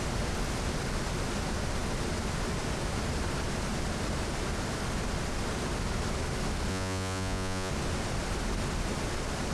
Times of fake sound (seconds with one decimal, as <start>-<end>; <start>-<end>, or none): 6.7-7.7